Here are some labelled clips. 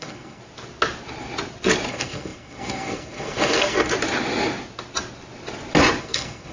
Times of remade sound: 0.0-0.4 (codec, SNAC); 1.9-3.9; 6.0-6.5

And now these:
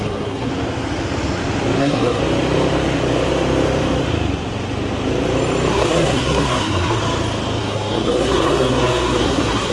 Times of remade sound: 0.0-0.5 (codec, SNAC); 1.8-2.2; 5.7-7.0; 7.6-9.7

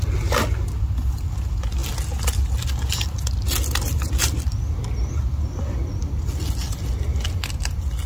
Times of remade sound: none

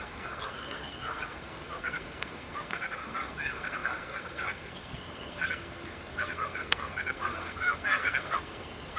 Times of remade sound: 0.0-9.0 (codec, SNAC)

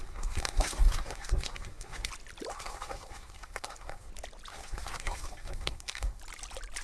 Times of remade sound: 0.0-2.1 (codec, SNAC); 2.5-4.1; 4.5-6.2